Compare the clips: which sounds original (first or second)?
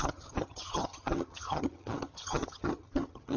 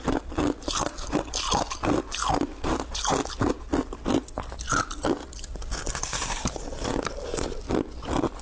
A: second